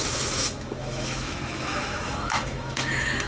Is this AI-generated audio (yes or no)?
yes